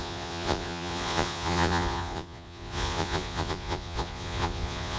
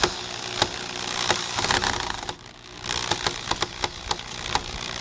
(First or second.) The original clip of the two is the second